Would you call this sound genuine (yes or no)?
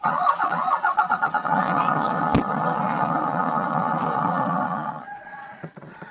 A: no